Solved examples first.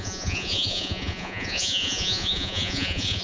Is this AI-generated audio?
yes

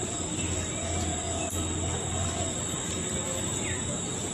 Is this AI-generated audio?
no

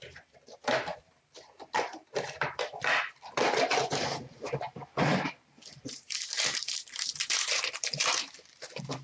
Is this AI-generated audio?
yes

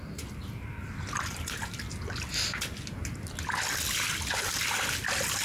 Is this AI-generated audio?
no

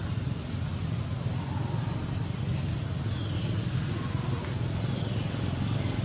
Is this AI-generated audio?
no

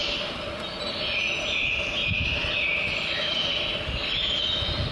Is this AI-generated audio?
no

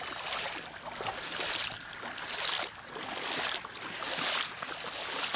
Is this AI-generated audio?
no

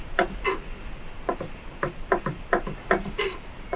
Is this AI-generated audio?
no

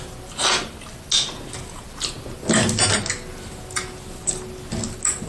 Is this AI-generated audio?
no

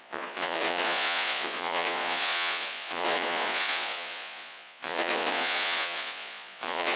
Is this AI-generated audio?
yes